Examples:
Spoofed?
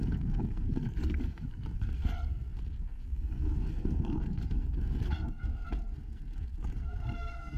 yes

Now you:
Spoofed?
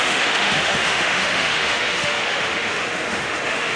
yes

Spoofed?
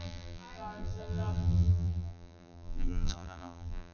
yes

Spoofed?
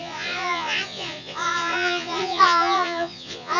yes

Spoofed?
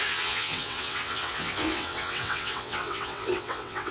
yes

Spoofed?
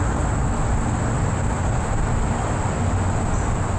no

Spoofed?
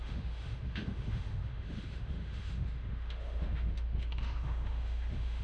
yes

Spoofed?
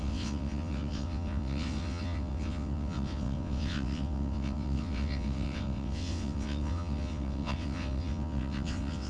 yes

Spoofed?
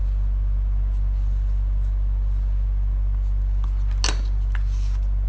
no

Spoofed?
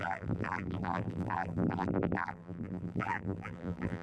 yes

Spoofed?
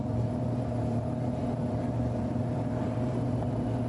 yes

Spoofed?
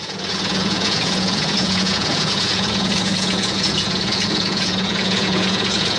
yes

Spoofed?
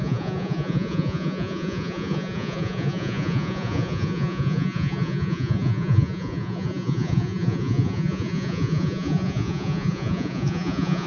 yes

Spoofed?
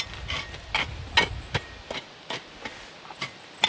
no